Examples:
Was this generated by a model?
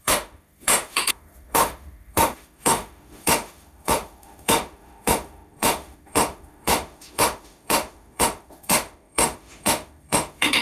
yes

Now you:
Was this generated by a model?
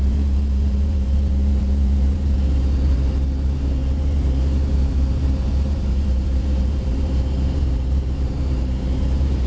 yes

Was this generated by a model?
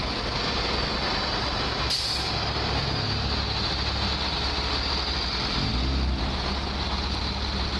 no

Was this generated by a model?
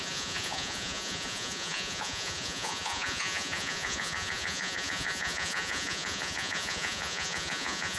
yes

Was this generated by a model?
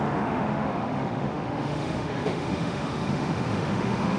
yes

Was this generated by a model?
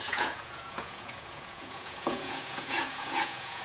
yes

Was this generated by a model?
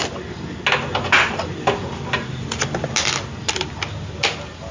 no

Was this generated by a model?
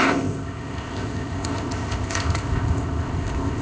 yes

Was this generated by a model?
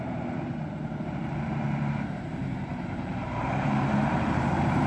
yes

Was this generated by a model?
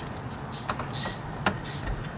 no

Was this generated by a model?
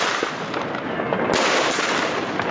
no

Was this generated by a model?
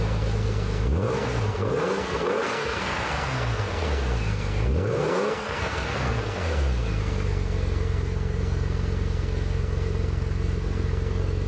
yes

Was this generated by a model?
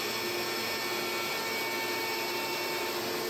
no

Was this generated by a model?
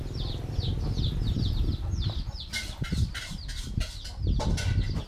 no